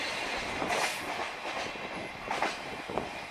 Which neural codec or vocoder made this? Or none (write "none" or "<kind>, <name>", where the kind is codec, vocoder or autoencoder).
none